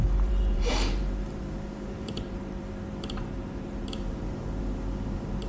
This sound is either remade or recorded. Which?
remade